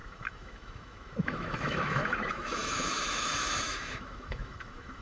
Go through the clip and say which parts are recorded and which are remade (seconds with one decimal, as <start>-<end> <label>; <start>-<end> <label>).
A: 0.0-5.0 remade